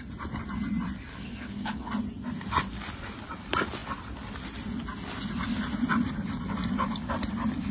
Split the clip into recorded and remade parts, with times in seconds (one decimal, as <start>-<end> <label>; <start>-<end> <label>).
0.0-1.1 recorded; 1.1-1.9 remade; 1.9-7.7 recorded